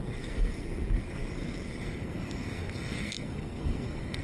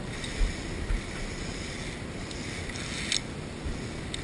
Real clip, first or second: second